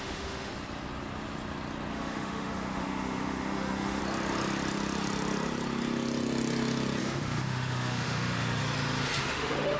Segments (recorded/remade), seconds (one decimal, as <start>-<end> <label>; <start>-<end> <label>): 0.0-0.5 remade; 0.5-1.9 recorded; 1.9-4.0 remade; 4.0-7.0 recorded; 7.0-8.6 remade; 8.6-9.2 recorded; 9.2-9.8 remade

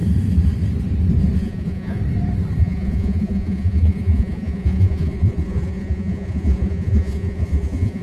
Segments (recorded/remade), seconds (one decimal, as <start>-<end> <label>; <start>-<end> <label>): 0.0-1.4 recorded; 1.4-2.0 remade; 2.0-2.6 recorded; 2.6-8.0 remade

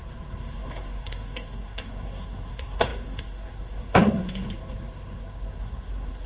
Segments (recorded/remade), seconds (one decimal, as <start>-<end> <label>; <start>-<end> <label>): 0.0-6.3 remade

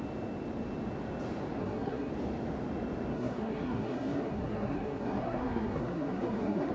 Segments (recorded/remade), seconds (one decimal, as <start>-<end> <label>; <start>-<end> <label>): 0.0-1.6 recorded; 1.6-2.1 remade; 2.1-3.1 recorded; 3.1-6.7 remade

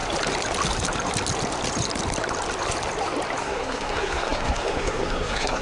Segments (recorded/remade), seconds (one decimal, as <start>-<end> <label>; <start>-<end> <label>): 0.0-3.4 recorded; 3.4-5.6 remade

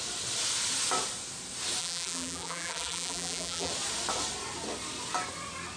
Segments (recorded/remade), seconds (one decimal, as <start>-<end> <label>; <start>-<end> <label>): 0.0-1.8 recorded; 1.8-3.7 remade; 3.7-5.8 recorded

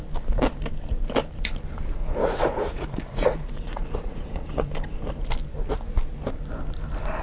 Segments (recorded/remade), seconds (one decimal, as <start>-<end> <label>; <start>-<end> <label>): 0.0-2.0 recorded; 2.0-4.7 remade; 4.7-7.2 recorded

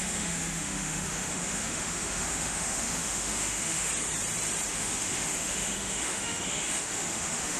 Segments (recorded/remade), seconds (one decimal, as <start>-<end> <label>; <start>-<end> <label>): 0.0-3.9 remade; 3.9-4.7 recorded; 4.7-7.6 remade